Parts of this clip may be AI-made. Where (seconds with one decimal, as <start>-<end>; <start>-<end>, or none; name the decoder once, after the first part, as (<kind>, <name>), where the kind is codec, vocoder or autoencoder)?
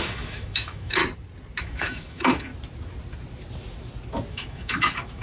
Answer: 0.0-1.0 (autoencoder, DAC-VAE); 1.6-2.5; 4.3-5.2